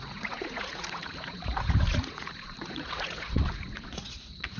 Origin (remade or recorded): remade